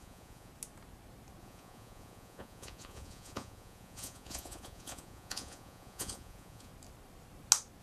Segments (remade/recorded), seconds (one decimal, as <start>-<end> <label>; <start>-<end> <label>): 0.0-0.5 remade; 0.5-1.4 recorded; 1.4-6.7 remade; 6.7-7.8 recorded